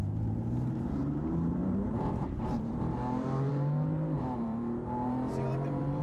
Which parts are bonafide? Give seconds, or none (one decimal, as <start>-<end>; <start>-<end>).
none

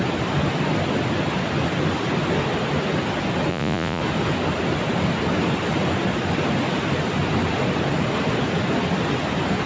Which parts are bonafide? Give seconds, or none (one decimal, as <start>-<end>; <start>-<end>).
0.0-3.5; 4.0-9.7

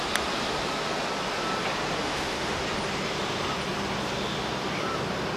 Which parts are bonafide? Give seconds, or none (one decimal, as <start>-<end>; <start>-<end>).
0.0-2.0; 2.6-5.4

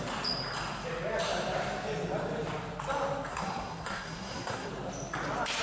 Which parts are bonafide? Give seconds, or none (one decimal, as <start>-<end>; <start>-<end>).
0.0-3.3; 4.7-5.6

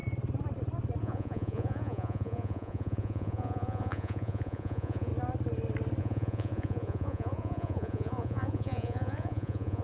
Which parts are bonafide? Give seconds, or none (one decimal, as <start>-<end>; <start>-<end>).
0.0-1.0; 5.1-6.0